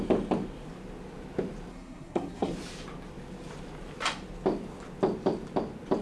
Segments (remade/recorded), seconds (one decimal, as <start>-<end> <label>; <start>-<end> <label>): 0.0-1.7 recorded; 1.7-2.5 remade; 2.5-6.0 recorded